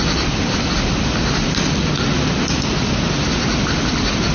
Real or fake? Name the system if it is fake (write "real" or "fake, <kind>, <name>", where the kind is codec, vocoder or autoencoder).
real